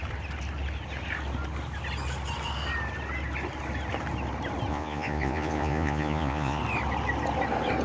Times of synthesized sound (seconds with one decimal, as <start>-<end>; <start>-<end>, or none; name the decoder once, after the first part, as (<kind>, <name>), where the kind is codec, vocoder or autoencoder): 4.7-6.6 (vocoder, Vocos)

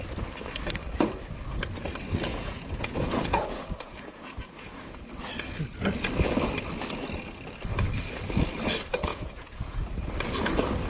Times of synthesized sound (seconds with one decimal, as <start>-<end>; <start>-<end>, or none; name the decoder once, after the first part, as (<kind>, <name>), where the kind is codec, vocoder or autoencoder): 2.3-5.1 (vocoder, Vocos); 9.1-10.1

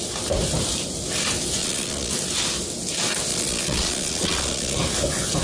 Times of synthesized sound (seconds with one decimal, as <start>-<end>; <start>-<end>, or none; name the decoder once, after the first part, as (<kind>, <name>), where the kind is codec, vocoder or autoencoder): 1.6-2.1 (vocoder, Vocos); 3.3-4.8

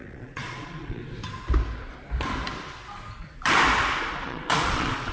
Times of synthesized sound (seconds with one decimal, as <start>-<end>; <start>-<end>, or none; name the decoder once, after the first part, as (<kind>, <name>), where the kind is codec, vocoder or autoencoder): 0.0-1.0 (vocoder, Vocos); 4.0-5.1

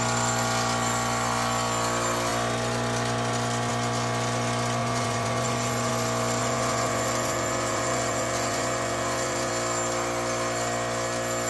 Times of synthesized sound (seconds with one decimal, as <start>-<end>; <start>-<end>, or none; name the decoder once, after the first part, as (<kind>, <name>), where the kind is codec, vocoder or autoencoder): 4.8-5.9 (vocoder, Vocos); 6.4-9.5

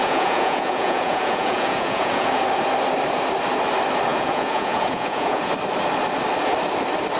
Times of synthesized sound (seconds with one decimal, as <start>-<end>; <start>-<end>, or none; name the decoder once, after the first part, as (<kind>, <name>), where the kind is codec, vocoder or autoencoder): 0.0-2.4 (vocoder, Vocos); 4.1-5.5

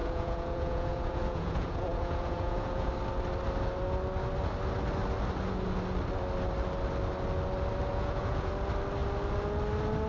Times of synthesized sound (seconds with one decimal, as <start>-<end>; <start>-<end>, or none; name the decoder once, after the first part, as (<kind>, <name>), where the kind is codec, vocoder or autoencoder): 0.0-2.9 (vocoder, Vocos); 7.9-8.5

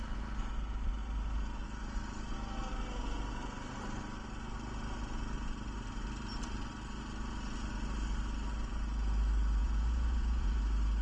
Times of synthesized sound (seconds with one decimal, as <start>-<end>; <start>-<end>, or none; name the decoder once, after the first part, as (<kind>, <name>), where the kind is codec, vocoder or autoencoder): 9.6-10.6 (vocoder, Vocos)